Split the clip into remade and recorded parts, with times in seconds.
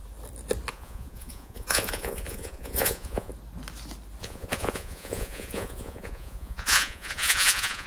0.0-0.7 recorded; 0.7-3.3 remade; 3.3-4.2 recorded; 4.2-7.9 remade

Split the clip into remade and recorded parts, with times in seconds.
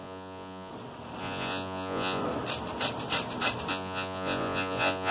0.0-0.7 remade; 0.7-1.2 recorded; 1.2-2.2 remade; 2.2-3.7 recorded; 3.7-5.1 remade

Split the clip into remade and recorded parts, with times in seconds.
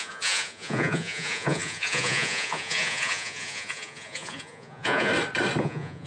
0.0-5.1 remade; 5.1-5.6 recorded; 5.6-6.1 remade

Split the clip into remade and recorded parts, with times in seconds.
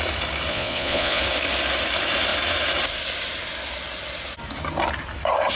0.0-0.5 recorded; 0.5-1.2 remade; 1.2-5.6 recorded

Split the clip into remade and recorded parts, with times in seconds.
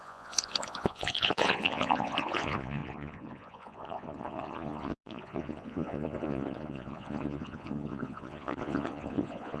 0.0-9.6 remade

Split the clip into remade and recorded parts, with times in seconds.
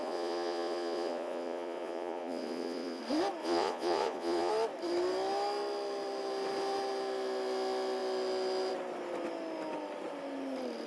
0.0-3.0 remade; 3.0-3.4 recorded; 3.4-4.5 remade; 4.5-10.9 recorded